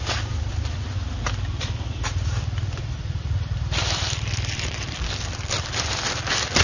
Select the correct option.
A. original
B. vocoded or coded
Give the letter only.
B